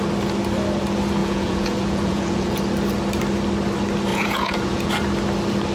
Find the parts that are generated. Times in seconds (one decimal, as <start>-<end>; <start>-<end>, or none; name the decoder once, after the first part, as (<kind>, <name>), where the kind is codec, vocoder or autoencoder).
1.2-2.6 (vocoder, Vocos); 4.1-4.9